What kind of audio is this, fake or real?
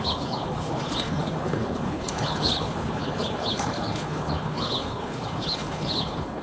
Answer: fake